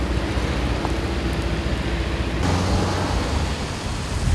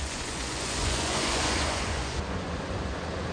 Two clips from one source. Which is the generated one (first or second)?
second